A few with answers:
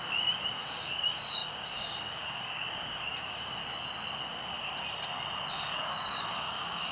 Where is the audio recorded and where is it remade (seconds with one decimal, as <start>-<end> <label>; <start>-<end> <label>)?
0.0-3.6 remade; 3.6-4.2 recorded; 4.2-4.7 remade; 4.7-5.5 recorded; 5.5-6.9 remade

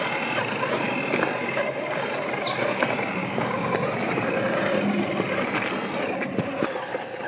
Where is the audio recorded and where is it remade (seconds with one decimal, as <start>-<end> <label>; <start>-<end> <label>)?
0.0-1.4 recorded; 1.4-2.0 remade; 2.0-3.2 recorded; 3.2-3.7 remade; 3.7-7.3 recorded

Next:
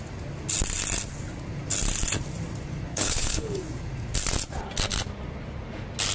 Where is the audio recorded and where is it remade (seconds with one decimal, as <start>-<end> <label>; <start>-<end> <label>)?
0.0-2.9 recorded; 2.9-3.6 remade; 3.6-6.1 recorded

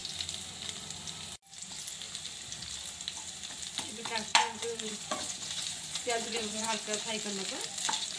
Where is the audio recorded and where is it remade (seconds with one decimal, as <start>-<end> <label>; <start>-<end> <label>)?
0.0-4.3 recorded; 4.3-7.0 remade; 7.0-8.2 recorded

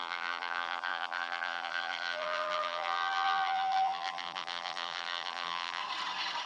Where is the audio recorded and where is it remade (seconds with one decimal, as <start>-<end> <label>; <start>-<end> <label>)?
0.0-5.8 remade; 5.8-6.5 recorded

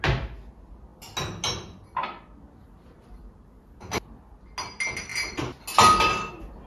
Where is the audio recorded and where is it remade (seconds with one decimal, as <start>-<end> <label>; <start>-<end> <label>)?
0.0-6.7 recorded

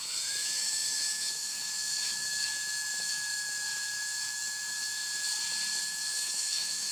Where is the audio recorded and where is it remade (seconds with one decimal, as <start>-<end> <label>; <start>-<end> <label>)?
0.0-5.0 remade; 5.0-5.8 recorded; 5.8-6.9 remade

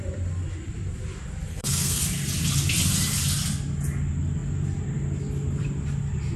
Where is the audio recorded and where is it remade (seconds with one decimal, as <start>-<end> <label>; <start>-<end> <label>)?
0.0-1.5 recorded; 1.5-2.0 remade; 2.0-6.4 recorded